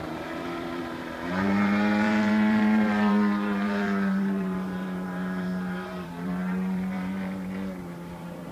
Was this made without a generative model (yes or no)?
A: no